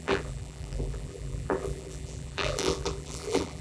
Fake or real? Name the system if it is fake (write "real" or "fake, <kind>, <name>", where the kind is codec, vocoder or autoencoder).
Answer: fake, vocoder, BigVGAN v2